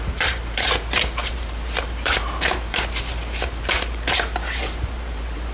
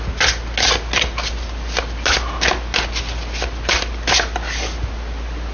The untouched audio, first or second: second